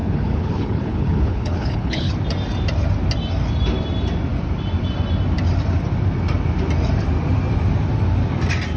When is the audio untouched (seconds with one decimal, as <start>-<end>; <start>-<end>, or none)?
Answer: 2.1-8.8